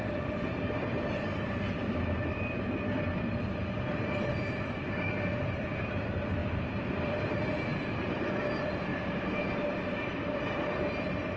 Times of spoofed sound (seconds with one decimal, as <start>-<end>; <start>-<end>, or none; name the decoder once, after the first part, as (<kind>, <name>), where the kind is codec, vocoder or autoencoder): 3.9-4.9 (vocoder, BigVGAN v2); 6.4-8.2; 8.9-10.0